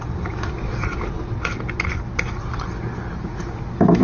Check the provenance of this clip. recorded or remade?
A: recorded